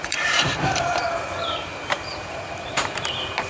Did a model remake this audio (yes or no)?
yes